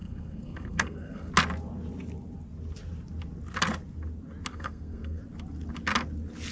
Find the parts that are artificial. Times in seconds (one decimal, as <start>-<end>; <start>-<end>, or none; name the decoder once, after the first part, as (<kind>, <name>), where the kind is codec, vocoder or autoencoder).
0.0-1.3 (codec, SNAC); 4.5-5.2